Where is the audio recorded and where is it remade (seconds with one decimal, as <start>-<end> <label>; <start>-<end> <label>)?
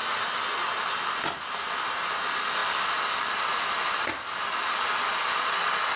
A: 0.0-2.6 recorded; 2.6-4.1 remade; 4.1-6.0 recorded